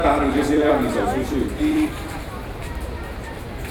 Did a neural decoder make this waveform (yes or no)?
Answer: yes